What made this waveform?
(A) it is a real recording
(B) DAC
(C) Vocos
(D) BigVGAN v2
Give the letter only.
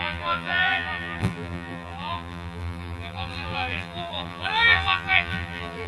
D